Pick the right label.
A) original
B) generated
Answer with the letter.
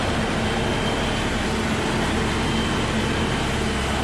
A